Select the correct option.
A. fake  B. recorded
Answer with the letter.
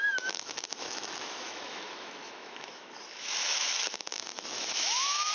A